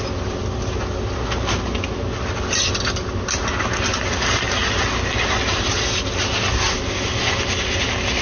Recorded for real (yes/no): yes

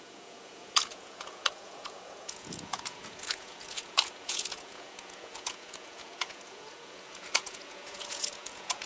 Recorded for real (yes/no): no